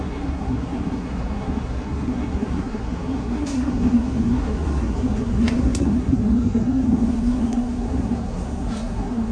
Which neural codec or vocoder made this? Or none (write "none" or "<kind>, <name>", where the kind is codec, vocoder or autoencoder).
codec, SNAC